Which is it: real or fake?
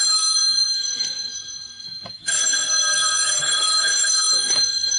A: fake